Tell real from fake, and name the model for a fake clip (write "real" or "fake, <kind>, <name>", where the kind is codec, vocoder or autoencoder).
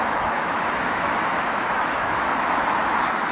fake, autoencoder, DAC-VAE